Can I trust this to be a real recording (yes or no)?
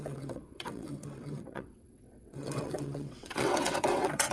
no